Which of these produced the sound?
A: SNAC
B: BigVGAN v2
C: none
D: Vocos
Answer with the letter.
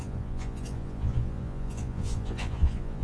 D